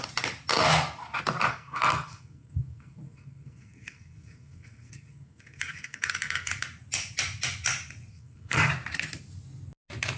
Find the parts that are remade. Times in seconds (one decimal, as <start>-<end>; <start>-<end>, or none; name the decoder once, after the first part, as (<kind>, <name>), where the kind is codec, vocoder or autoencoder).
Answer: 1.5-6.5 (codec, SNAC); 8.1-8.7